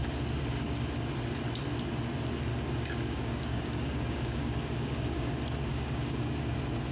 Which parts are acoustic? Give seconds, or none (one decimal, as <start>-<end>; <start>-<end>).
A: 0.0-2.5; 5.3-5.7; 6.3-6.9